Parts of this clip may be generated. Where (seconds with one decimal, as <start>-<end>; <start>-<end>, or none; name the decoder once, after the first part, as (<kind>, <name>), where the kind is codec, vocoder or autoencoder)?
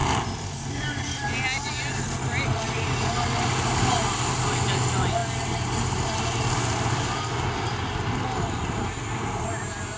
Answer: none